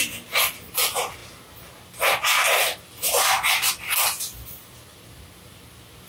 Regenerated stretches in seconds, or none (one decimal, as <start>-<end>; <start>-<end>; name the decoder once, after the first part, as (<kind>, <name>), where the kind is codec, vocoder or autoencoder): none